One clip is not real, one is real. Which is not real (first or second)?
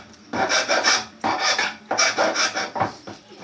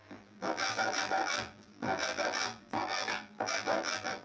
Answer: second